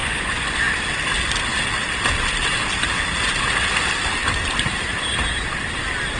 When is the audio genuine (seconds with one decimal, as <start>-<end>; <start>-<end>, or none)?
0.6-6.2